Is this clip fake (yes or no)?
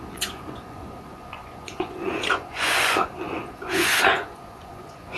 yes